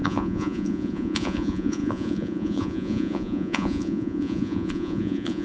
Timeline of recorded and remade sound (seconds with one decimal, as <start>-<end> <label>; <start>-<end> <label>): 0.0-5.4 remade